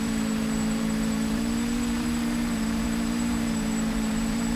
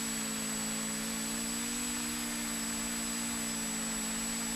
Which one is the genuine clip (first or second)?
second